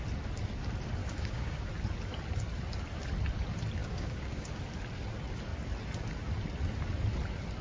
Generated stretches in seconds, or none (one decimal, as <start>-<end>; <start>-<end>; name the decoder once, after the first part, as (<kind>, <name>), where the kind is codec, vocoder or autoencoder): 1.0-1.7 (codec, DAC); 3.8-4.6